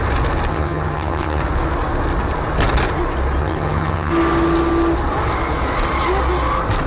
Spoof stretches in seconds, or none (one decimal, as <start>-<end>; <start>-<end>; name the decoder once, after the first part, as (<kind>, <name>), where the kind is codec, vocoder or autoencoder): 0.5-1.4 (vocoder, HiFi-GAN); 3.4-4.1